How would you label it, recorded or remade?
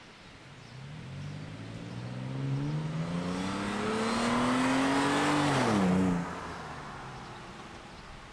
recorded